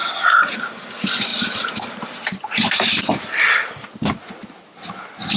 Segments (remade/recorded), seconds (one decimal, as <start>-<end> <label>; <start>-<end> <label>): 0.0-0.5 remade; 0.5-5.4 recorded